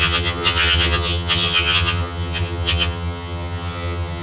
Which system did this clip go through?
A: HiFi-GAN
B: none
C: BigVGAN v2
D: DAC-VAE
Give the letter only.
A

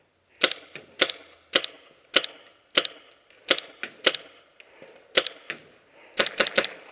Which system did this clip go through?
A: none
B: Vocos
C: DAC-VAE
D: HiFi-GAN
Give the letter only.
A